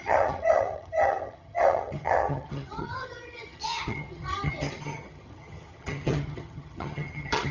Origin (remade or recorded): remade